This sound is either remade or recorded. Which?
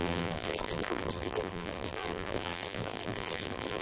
remade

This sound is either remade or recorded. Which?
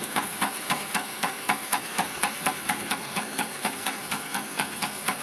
remade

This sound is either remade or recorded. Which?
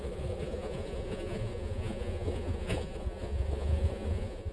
remade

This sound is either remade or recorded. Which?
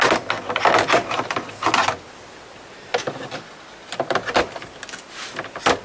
recorded